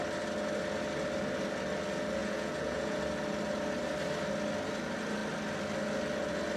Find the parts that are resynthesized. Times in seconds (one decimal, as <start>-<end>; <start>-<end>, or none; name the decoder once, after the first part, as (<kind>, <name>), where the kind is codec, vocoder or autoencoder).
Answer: 2.2-3.0 (vocoder, Vocos)